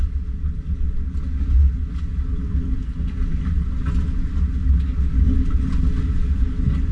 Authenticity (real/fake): real